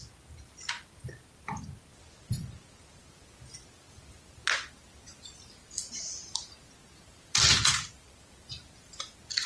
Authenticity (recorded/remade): recorded